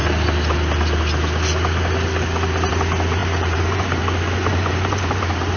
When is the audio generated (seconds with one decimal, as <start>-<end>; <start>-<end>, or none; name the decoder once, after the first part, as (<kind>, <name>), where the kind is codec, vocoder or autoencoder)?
3.2-4.0 (vocoder, BigVGAN v2); 4.5-5.6